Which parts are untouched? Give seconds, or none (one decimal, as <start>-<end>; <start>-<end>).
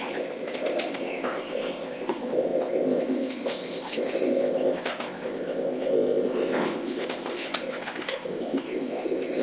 none